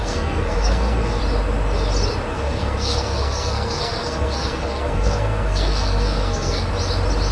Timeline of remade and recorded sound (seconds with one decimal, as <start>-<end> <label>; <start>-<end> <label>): 0.0-1.2 remade; 1.2-2.3 recorded; 2.3-6.7 remade; 6.7-7.3 recorded